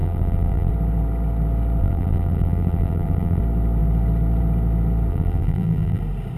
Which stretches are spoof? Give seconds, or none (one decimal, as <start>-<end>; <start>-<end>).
0.0-0.7; 1.8-3.4; 5.1-6.0